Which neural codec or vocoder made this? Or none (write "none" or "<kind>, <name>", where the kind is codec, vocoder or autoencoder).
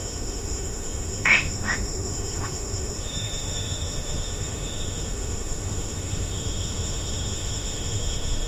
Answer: autoencoder, DAC-VAE